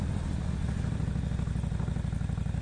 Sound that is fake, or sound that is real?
real